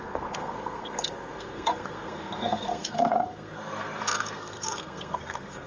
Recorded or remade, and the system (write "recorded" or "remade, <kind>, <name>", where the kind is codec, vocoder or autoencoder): remade, codec, SNAC